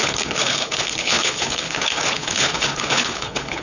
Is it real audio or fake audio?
fake